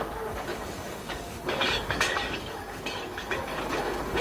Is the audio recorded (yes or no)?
no